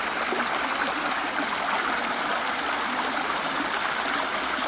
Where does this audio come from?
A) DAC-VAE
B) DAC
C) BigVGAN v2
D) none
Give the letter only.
D